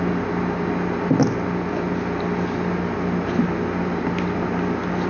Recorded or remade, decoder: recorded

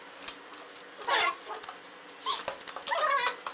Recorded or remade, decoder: recorded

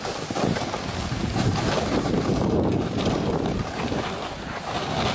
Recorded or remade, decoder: recorded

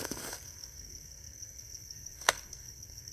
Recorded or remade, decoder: remade, codec, SNAC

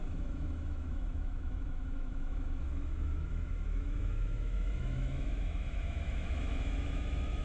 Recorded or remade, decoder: remade, autoencoder, DAC-VAE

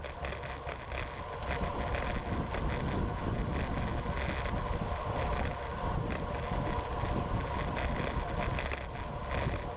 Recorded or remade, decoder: recorded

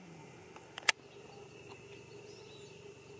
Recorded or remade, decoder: recorded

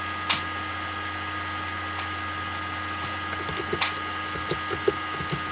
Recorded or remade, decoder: recorded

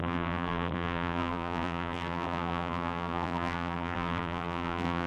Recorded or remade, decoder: remade, vocoder, BigVGAN v2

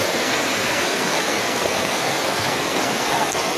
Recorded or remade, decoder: remade, codec, SNAC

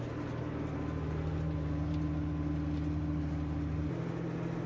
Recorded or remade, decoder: recorded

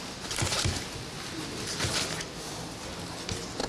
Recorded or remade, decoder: recorded